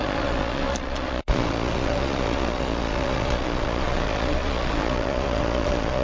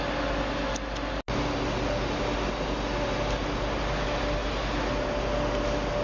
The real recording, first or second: second